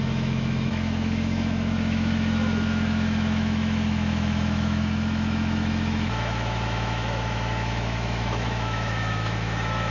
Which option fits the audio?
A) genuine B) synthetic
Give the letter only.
B